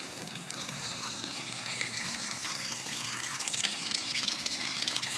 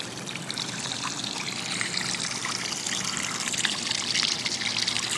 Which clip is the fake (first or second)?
first